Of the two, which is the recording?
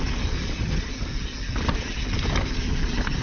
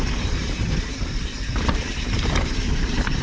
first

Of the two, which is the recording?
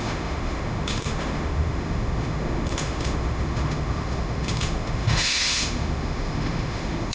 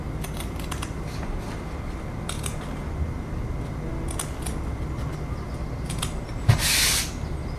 second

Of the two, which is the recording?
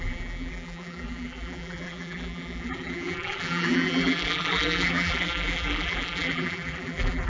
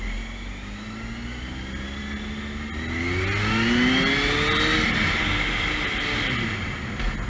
second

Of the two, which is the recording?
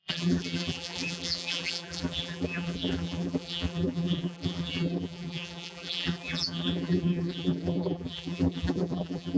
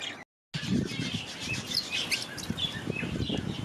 second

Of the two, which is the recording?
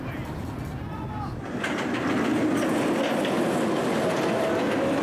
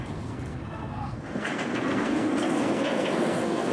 first